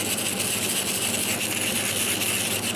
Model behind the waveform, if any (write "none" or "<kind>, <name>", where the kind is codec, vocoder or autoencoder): none